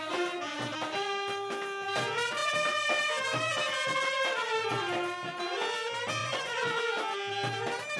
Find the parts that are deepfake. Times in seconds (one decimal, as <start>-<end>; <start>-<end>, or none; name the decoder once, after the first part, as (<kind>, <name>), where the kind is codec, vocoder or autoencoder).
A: 6.2-6.8 (vocoder, Vocos)